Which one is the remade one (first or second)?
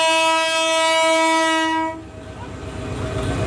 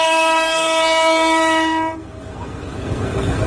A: second